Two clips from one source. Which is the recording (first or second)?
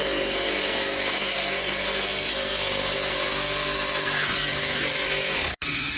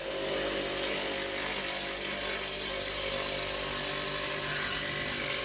second